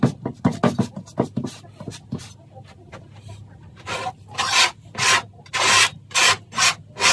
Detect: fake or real real